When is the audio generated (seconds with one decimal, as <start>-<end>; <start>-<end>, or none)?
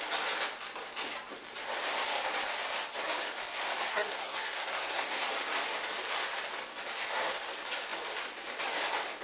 3.9-5.3